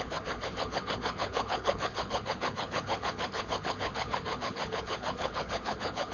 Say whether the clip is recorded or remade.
remade